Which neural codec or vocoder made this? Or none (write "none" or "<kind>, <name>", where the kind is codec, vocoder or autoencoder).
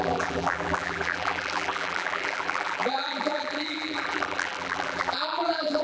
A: vocoder, BigVGAN v2